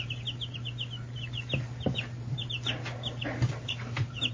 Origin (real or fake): real